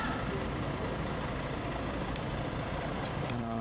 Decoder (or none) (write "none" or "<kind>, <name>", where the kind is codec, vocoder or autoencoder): vocoder, BigVGAN v2